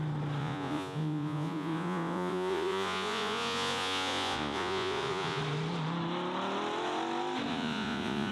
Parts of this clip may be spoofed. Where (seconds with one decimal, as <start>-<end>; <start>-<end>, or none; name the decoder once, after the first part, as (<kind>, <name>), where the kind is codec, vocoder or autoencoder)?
0.4-5.4 (vocoder, Vocos); 7.5-8.3